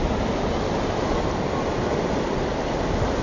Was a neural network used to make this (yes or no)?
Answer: no